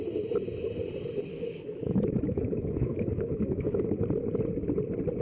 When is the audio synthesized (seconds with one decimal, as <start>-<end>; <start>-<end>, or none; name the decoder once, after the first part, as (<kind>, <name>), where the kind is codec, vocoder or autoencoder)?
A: 1.3-3.9 (autoencoder, DAC-VAE)